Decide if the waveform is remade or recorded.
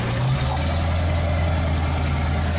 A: recorded